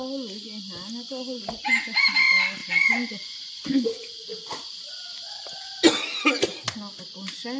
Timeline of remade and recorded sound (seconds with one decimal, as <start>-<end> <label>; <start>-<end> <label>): 0.0-2.6 recorded; 2.6-3.6 remade; 3.6-7.6 recorded